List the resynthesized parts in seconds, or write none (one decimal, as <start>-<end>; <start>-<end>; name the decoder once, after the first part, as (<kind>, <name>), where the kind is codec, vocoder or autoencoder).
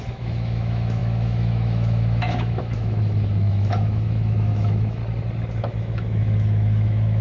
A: 0.0-5.0 (autoencoder, DAC-VAE); 5.6-7.2